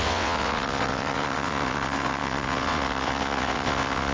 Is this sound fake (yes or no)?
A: yes